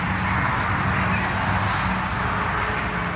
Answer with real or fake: real